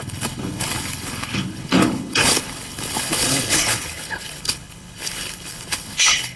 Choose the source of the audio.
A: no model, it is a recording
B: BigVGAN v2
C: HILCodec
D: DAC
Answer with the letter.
C